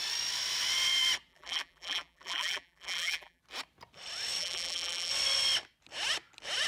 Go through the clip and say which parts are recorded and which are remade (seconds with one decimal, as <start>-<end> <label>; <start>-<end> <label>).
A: 0.0-1.3 recorded; 1.3-3.4 remade; 3.4-4.4 recorded; 4.4-5.1 remade; 5.1-6.7 recorded